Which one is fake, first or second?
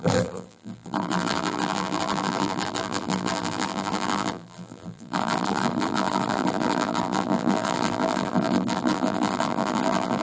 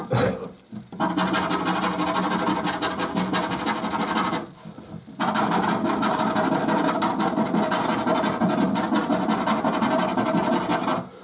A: first